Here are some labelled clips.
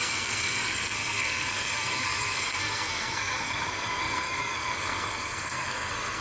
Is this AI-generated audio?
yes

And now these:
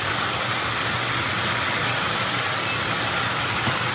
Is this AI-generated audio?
no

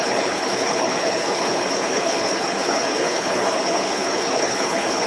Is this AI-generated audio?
yes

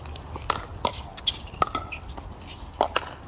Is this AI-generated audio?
no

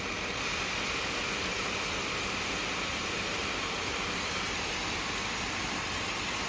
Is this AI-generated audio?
no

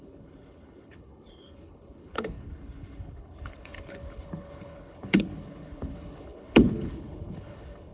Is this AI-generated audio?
yes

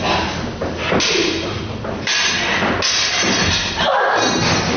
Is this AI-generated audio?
no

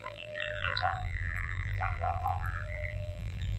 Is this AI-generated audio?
yes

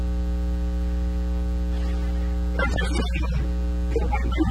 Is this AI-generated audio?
no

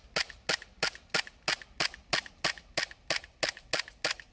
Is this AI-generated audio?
no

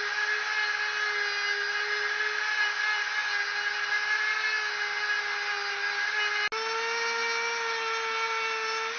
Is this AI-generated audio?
no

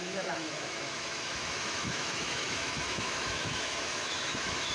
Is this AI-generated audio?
yes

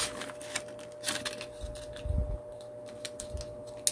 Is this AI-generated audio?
no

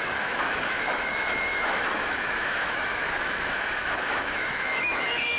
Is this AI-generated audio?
yes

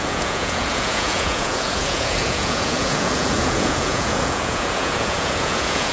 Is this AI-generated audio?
yes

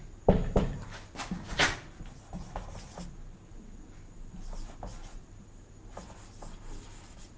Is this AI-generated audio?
no